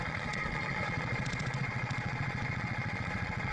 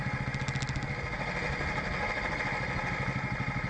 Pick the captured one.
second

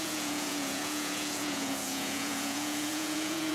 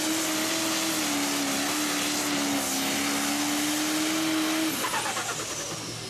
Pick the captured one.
second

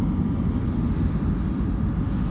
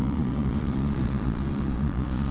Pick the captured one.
first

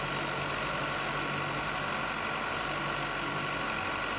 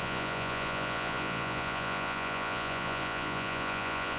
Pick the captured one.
first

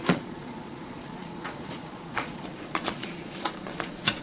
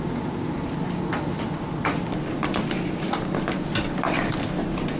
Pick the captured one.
second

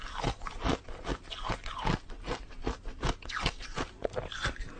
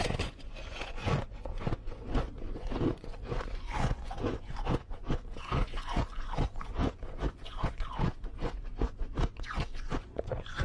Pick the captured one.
first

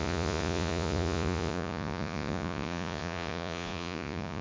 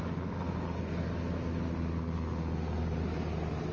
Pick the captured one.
second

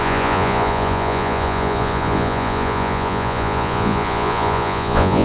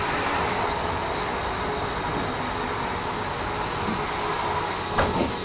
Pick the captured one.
second